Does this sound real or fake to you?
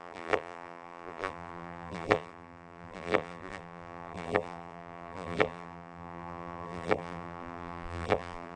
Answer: fake